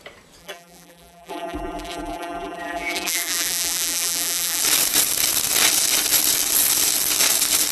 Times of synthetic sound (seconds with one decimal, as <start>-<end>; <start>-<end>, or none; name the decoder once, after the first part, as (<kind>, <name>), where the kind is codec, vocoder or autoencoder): 0.4-4.6 (vocoder, BigVGAN v2)